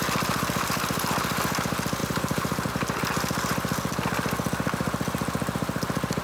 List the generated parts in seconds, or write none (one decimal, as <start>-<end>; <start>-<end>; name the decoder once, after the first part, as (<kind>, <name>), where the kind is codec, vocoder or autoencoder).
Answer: 2.0-2.7 (vocoder, BigVGAN v2)